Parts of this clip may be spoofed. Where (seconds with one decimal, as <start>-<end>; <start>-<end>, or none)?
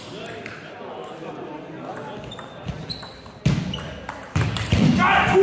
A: 0.0-1.9